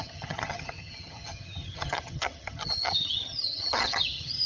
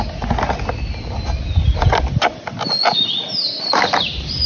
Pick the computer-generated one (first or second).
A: first